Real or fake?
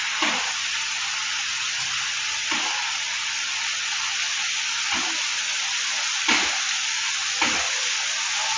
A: real